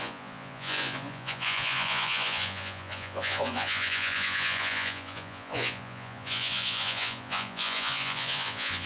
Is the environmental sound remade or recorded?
remade